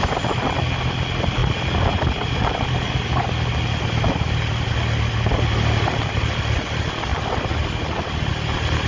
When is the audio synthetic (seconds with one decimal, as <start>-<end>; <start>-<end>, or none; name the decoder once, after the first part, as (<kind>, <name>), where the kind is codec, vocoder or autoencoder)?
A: none